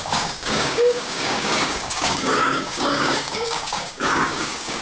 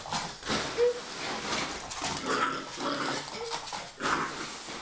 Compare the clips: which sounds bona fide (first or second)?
second